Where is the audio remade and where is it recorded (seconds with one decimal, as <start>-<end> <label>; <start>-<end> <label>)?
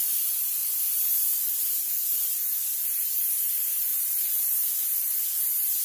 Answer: 0.0-5.8 recorded